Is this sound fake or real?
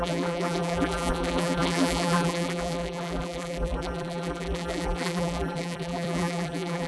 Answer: fake